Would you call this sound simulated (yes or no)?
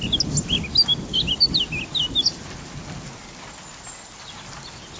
no